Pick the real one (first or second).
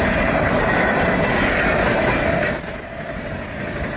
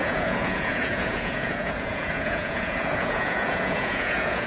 first